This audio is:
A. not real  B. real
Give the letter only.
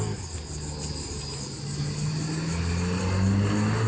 B